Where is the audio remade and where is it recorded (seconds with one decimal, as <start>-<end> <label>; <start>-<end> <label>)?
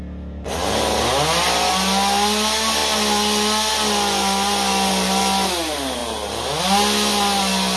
0.0-7.8 recorded